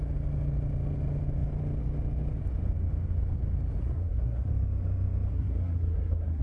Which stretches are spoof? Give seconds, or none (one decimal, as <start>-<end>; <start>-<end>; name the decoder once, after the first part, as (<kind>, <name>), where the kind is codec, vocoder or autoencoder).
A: 3.8-4.5 (codec, SNAC); 5.3-6.4